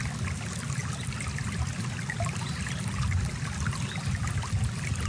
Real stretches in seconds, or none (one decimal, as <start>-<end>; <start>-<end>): 0.0-5.1